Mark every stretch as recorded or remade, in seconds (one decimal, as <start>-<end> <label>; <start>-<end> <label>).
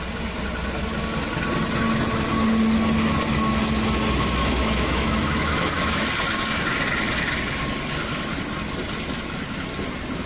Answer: 0.0-4.6 recorded; 4.6-6.0 remade; 6.0-10.3 recorded